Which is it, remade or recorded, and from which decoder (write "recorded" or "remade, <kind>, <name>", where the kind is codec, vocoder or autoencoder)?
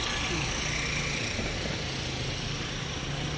recorded